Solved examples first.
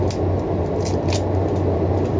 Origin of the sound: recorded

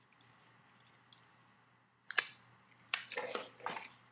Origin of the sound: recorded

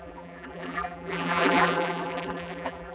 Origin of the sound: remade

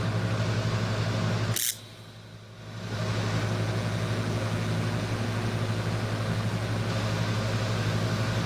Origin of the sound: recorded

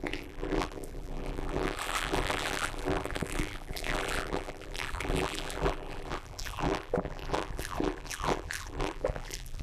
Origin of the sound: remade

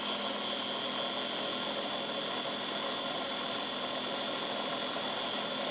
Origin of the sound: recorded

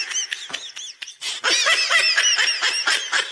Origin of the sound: recorded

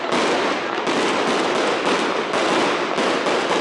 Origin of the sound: recorded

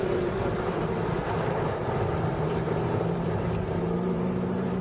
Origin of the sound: remade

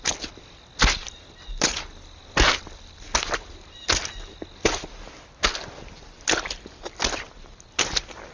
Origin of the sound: recorded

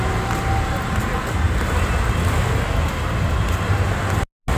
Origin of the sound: recorded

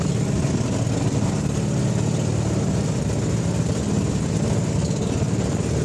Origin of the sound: recorded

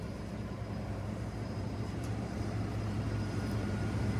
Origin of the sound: remade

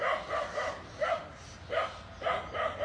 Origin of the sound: recorded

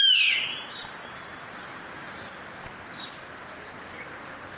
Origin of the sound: recorded